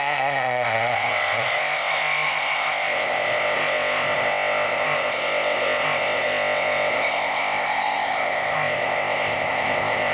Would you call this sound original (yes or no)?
no